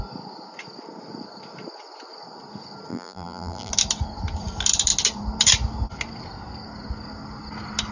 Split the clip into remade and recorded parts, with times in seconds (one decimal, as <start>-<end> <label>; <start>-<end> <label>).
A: 0.0-2.9 recorded; 2.9-3.7 remade; 3.7-7.9 recorded